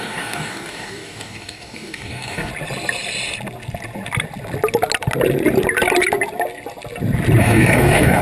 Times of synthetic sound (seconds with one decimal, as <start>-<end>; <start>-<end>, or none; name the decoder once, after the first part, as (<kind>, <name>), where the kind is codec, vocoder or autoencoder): 0.0-2.5 (codec, DAC); 7.4-8.2